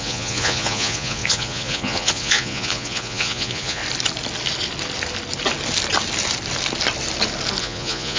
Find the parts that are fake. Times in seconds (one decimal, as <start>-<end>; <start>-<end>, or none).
0.0-3.8; 7.6-8.2